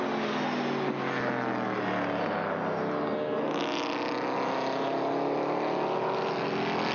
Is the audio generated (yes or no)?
no